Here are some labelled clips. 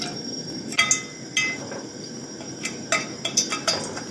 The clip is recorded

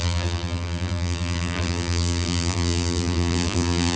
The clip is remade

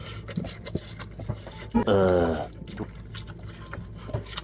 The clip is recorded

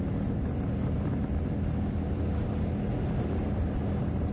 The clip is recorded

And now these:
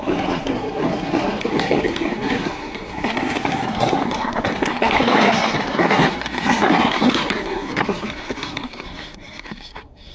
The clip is remade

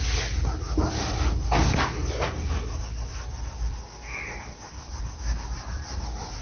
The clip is recorded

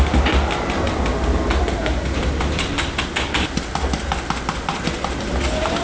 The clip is recorded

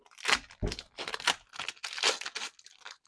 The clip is recorded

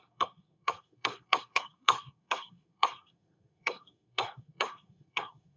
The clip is remade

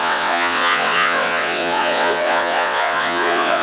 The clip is remade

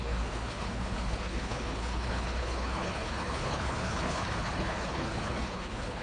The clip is remade